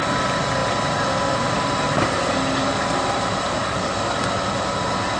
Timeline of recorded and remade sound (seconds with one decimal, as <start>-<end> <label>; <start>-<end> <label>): 0.0-3.6 recorded; 3.6-4.2 remade; 4.2-5.2 recorded